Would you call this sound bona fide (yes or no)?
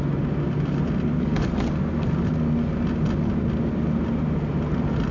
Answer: yes